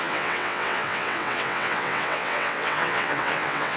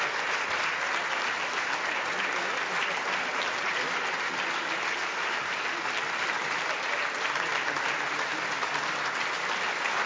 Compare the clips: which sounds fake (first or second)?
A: first